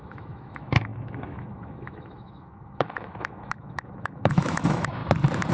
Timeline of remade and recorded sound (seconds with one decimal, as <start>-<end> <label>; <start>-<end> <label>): 0.0-5.0 remade; 5.0-5.5 recorded

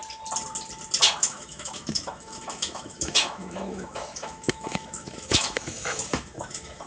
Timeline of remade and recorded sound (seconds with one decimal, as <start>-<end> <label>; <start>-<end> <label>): 0.0-1.2 recorded; 1.2-6.9 remade

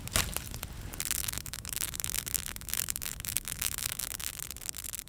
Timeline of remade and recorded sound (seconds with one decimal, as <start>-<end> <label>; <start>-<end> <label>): 0.0-1.2 recorded; 1.2-4.3 remade; 4.3-5.1 recorded

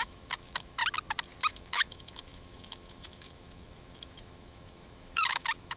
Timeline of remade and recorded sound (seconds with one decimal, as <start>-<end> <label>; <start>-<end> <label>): 0.0-0.8 remade; 0.8-1.5 recorded; 1.5-5.8 remade

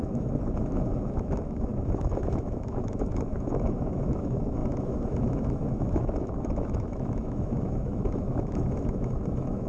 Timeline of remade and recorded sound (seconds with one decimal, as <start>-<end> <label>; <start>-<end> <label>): 0.0-9.7 remade

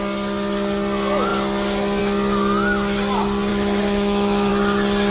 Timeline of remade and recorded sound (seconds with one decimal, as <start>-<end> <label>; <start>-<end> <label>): 0.0-3.5 recorded; 3.5-4.5 remade; 4.5-5.1 recorded

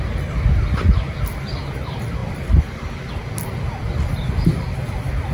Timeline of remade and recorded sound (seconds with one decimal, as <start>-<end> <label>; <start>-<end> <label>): 0.0-5.3 recorded